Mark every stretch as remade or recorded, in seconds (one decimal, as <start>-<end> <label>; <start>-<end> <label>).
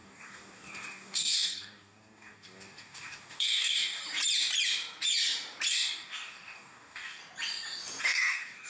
0.0-4.0 remade; 4.0-5.7 recorded; 5.7-7.2 remade; 7.2-8.0 recorded; 8.0-8.7 remade